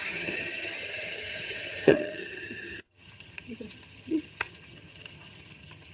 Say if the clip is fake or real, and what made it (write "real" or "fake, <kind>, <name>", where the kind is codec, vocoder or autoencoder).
fake, vocoder, HiFi-GAN